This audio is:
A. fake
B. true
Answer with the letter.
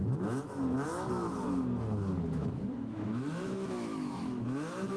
A